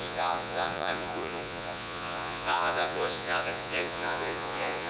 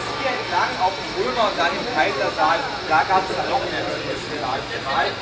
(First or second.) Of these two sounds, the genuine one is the second